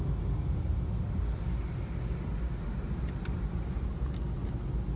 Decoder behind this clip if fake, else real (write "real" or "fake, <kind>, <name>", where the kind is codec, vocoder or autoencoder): real